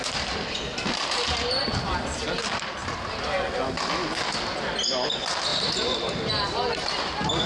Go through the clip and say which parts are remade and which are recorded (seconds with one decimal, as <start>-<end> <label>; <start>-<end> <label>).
0.0-5.5 recorded; 5.5-6.3 remade; 6.3-7.5 recorded